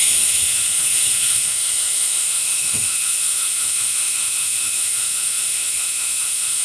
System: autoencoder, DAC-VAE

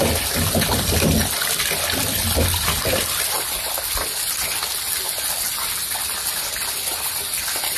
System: none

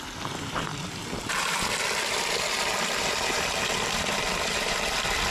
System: none